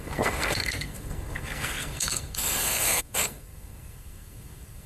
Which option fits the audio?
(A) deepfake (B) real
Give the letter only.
A